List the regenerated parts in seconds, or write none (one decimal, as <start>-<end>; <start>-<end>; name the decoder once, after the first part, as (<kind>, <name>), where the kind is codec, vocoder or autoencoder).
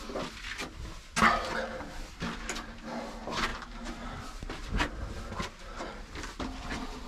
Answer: none